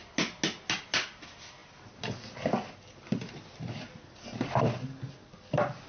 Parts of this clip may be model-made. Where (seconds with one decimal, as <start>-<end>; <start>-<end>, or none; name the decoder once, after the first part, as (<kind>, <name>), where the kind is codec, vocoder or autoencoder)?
none